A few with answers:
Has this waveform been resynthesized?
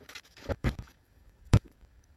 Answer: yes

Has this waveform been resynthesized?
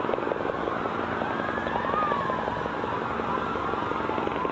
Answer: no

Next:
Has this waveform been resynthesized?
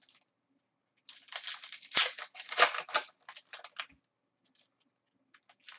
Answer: no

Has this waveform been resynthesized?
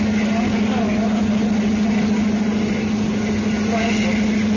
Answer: no